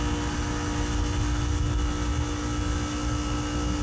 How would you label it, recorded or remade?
recorded